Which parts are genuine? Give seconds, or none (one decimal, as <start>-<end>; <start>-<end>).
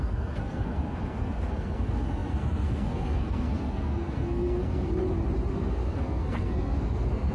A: 5.0-5.5